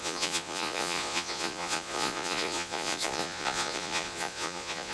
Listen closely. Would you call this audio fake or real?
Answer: fake